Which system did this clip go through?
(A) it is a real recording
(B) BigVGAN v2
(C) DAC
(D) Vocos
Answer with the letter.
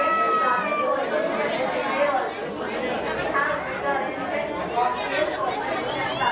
A